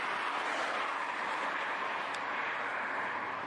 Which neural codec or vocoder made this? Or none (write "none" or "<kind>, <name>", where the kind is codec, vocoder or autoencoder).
none